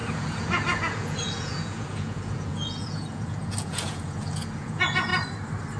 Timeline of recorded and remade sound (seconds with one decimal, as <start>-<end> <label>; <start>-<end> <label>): 0.0-5.1 remade; 5.1-5.8 recorded